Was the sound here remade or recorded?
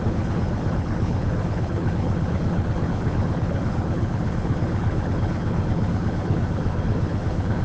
remade